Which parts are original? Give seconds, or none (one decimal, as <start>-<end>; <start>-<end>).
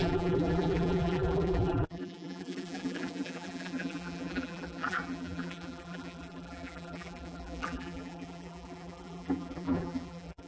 none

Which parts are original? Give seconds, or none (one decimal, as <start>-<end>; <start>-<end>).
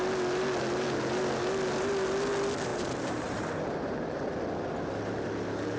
0.0-2.7; 3.6-5.8